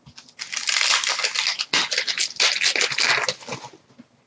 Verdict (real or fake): real